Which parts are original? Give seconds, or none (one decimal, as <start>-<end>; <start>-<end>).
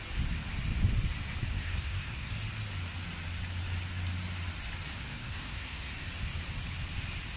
0.0-1.5; 2.3-5.1; 5.9-7.4